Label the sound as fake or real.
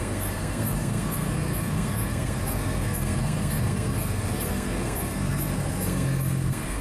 fake